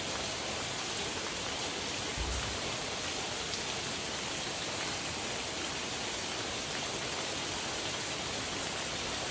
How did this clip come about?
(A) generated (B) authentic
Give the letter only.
B